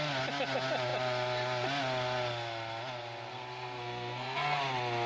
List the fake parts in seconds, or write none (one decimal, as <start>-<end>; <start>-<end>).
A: 3.3-4.6